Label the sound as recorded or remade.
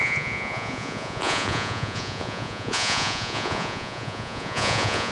remade